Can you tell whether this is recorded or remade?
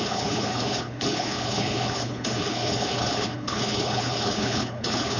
remade